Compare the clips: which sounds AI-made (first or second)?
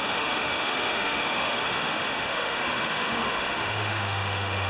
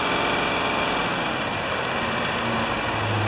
first